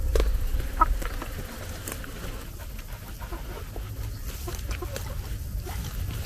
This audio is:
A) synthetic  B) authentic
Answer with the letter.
B